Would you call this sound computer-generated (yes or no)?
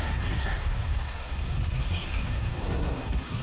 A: yes